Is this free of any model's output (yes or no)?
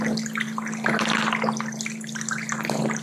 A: yes